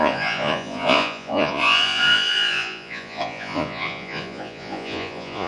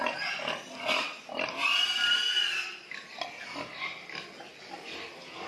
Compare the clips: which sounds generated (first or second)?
first